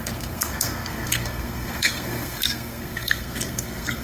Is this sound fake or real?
fake